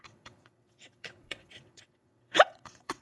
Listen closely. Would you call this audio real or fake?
fake